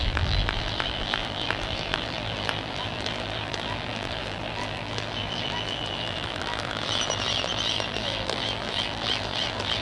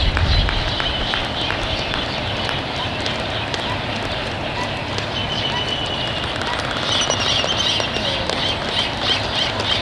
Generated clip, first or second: first